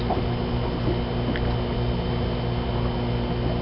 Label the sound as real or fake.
real